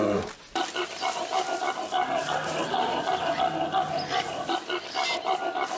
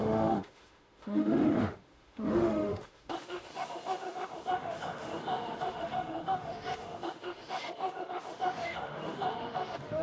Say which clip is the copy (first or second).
second